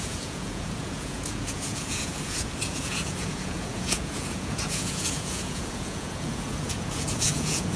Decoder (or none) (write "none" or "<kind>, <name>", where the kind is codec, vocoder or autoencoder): vocoder, Vocos